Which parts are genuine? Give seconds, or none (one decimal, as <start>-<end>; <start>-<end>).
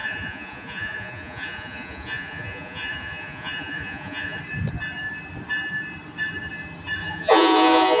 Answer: 4.4-7.0